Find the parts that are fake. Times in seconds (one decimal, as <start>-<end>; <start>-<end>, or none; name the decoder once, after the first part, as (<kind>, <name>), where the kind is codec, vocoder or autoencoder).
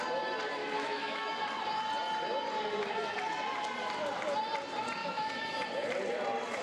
0.6-1.4 (autoencoder, DAC-VAE); 5.0-5.6